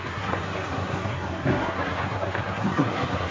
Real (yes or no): no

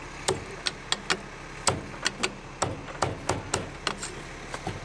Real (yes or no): yes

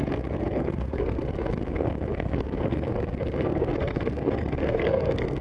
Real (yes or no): no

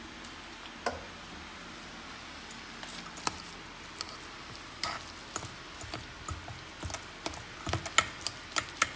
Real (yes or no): yes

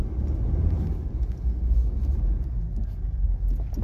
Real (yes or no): yes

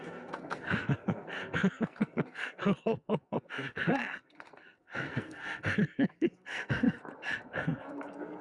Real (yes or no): no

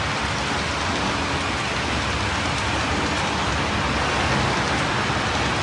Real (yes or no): yes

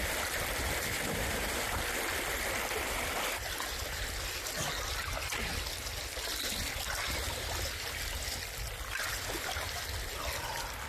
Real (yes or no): yes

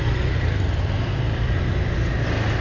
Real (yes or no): yes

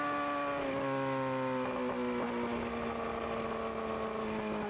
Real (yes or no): yes